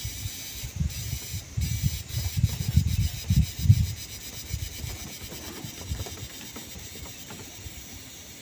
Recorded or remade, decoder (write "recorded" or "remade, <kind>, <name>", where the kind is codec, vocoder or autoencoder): recorded